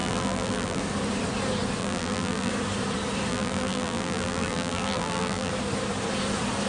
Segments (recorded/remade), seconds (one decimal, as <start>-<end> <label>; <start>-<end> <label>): 0.0-0.8 remade; 0.8-1.8 recorded; 1.8-2.5 remade; 2.5-3.3 recorded; 3.3-5.5 remade; 5.5-6.7 recorded